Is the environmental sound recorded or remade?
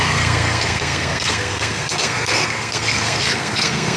remade